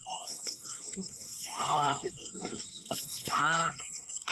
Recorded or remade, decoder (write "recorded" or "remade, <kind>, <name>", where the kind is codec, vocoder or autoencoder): remade, codec, SNAC